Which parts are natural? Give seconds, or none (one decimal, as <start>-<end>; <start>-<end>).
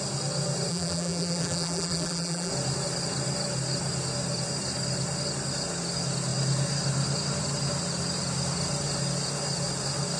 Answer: 0.0-0.7; 2.5-10.2